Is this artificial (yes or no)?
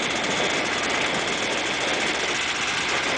no